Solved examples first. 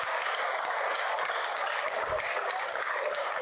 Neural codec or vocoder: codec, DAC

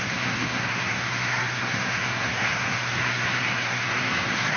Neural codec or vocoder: codec, SNAC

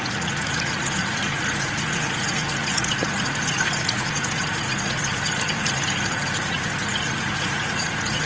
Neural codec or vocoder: vocoder, Vocos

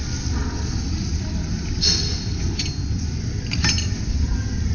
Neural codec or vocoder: none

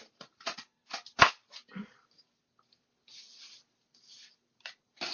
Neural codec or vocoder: none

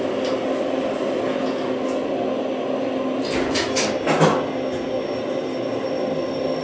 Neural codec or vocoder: none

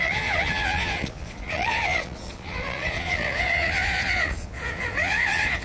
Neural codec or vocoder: vocoder, Vocos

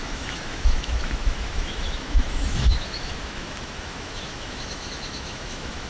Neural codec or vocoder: autoencoder, DAC-VAE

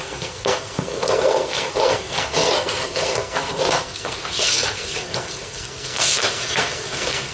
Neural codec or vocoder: codec, SNAC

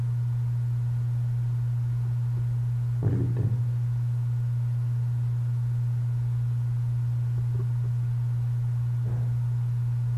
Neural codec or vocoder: none